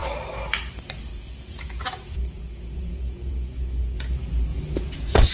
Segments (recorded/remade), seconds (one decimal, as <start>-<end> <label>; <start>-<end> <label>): 0.0-1.1 recorded; 1.1-4.1 remade; 4.1-4.5 recorded; 4.5-5.3 remade